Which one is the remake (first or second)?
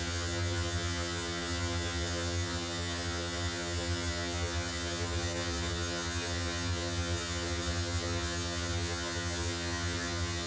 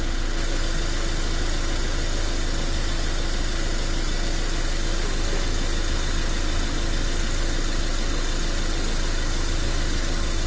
first